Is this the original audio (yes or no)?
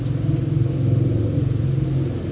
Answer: yes